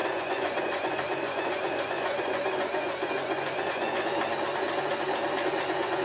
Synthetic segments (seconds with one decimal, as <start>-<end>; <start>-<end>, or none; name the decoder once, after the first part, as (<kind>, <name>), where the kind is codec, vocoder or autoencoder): 0.0-4.1 (vocoder, Vocos); 5.4-6.0